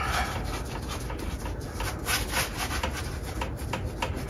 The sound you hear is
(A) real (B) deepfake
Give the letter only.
A